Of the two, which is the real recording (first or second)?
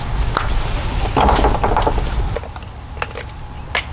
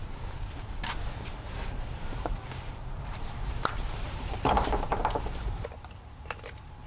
first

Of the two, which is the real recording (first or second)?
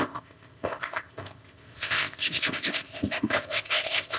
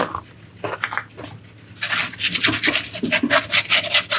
second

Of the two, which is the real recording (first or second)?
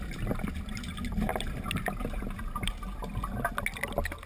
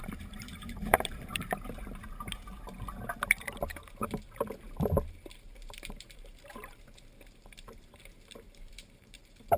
first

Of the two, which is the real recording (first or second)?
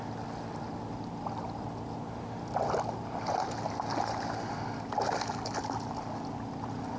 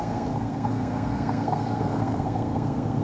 first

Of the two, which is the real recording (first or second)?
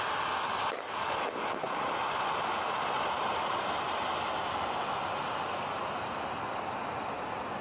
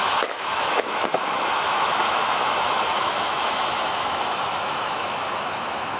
first